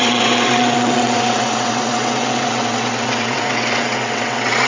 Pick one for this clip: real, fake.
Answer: fake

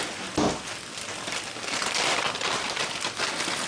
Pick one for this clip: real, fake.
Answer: real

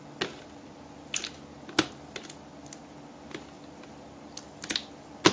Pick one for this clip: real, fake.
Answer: real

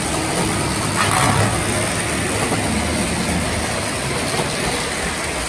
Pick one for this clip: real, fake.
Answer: real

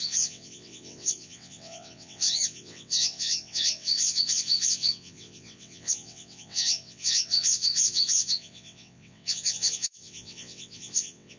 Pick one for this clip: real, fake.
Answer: fake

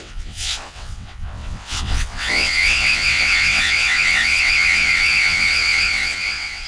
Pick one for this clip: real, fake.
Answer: fake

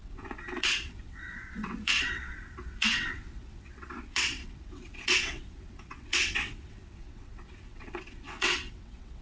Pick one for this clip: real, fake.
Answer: fake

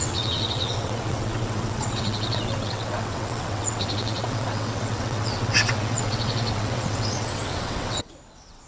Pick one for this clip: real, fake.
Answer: fake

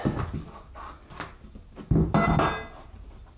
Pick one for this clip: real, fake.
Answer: real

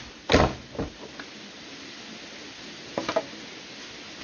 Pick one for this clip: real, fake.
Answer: real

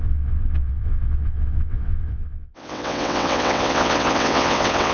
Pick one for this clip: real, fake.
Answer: fake